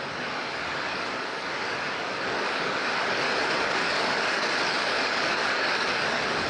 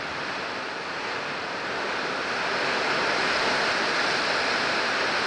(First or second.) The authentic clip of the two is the second